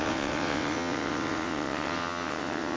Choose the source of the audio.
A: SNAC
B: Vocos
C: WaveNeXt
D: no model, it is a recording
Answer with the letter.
C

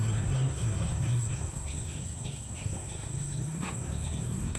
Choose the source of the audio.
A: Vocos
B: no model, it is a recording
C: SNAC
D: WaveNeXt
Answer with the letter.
C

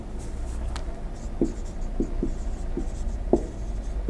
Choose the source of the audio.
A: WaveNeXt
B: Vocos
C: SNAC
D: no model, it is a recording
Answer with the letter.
D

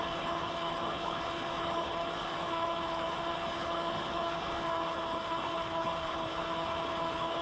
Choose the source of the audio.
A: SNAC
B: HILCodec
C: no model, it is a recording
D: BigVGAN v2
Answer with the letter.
B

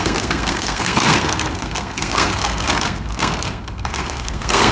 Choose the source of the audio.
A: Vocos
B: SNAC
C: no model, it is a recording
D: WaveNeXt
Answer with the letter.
B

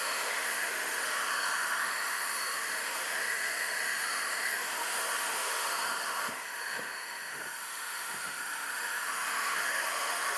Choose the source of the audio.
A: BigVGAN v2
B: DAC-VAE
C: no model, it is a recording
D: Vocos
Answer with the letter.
B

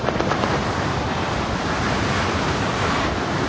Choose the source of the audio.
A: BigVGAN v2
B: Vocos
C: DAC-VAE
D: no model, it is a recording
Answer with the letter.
A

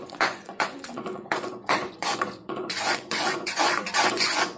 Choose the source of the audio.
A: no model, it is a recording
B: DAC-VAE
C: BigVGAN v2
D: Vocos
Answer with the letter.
D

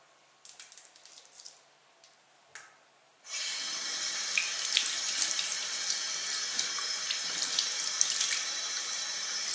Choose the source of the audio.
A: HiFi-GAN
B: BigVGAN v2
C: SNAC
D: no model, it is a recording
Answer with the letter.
D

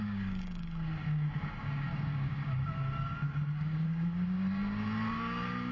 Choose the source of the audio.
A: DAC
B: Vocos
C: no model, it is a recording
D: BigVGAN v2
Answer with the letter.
A